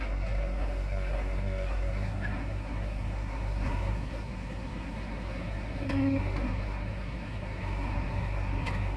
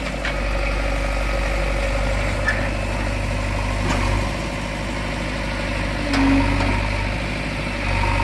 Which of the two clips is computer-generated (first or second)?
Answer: first